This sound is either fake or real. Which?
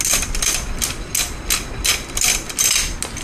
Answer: real